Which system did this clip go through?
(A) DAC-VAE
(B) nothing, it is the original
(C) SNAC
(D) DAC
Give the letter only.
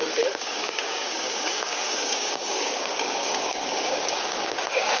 D